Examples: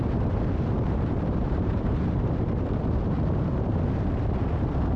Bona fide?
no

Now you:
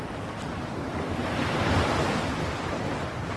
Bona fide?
no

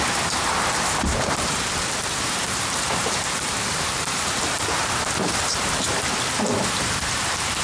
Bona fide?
no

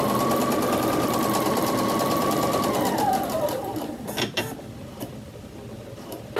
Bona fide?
no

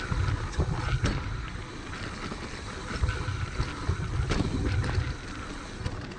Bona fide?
yes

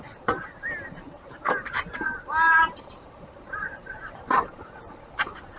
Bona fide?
no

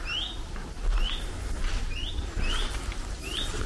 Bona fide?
yes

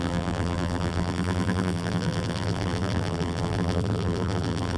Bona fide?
no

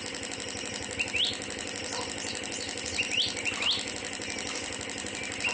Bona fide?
yes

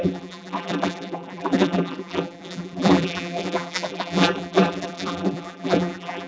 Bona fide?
no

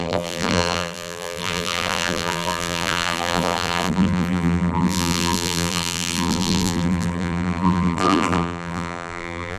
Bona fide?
no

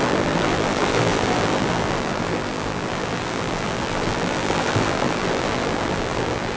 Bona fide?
no